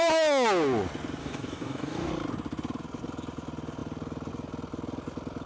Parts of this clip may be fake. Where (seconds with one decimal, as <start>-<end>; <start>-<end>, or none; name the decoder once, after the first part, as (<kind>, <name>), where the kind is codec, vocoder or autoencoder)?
1.2-2.1 (codec, DAC)